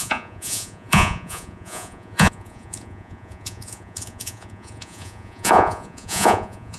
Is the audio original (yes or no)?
no